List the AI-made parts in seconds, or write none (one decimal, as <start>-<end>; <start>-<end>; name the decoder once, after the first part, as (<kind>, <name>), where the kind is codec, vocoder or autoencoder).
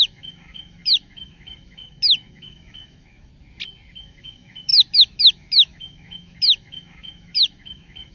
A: 0.0-3.3 (autoencoder, DAC-VAE); 4.0-8.1